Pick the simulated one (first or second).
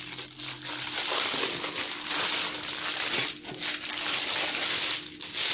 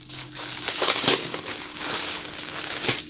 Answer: second